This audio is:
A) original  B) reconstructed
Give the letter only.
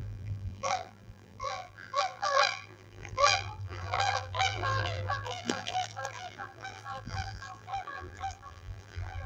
B